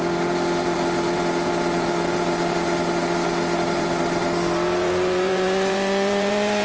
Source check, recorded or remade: remade